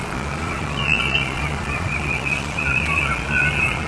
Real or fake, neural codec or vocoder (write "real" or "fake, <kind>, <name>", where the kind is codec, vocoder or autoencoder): fake, vocoder, Vocos